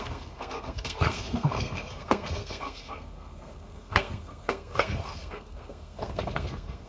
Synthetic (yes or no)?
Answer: yes